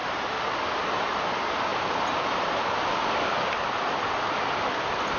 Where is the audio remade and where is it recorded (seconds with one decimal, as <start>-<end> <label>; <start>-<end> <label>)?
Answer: 0.0-5.2 recorded